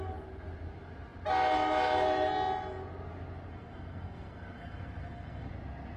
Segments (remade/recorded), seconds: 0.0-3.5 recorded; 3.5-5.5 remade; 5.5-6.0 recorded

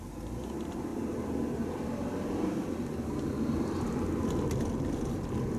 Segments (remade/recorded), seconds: 0.0-0.9 recorded; 0.9-4.2 remade; 4.2-5.6 recorded

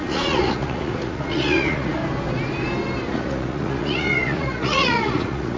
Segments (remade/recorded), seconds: 0.0-2.0 remade; 2.0-3.1 recorded; 3.1-5.6 remade

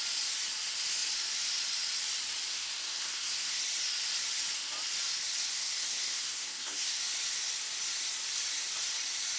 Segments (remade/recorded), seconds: 0.0-2.5 recorded; 2.5-3.6 remade; 3.6-5.5 recorded; 5.5-7.0 remade; 7.0-9.4 recorded

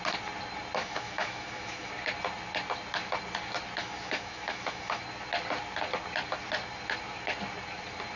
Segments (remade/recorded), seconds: 0.0-0.8 recorded; 0.8-1.9 remade; 1.9-3.8 recorded; 3.8-5.0 remade; 5.0-8.2 recorded